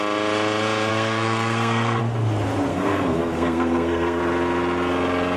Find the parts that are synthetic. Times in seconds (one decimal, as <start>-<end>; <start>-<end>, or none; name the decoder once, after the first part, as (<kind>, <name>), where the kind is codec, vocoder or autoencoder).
0.9-2.0 (codec, SNAC); 2.7-4.2